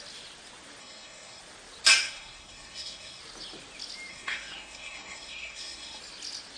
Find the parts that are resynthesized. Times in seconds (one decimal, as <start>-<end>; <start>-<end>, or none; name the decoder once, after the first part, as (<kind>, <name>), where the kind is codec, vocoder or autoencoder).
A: 0.8-1.4 (codec, SNAC); 2.0-3.2; 4.1-6.0